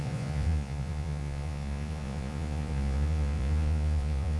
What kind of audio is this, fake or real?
fake